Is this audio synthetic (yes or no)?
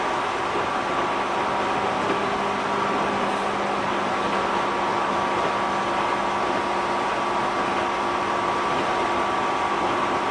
no